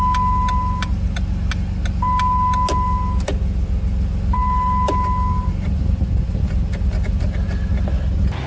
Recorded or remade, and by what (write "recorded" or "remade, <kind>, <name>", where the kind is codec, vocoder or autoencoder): recorded